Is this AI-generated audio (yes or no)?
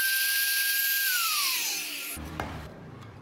yes